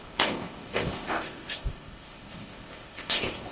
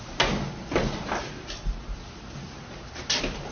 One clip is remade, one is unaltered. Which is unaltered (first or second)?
second